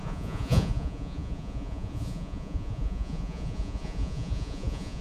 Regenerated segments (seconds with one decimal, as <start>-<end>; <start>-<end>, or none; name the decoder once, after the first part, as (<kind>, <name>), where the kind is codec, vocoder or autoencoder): 0.0-5.0 (vocoder, Vocos)